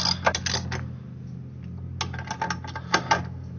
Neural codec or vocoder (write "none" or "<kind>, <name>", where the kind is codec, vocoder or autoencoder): none